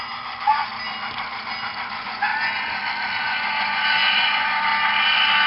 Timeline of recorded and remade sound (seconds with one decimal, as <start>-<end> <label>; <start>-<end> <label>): 0.0-0.7 remade; 0.7-1.9 recorded; 1.9-2.3 remade; 2.3-3.2 recorded; 3.2-4.7 remade; 4.7-5.5 recorded